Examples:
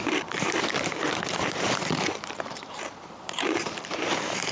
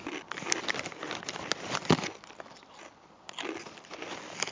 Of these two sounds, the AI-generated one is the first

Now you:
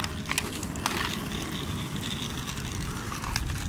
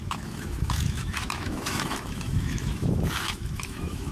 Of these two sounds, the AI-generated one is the second